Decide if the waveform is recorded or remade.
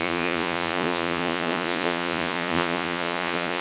remade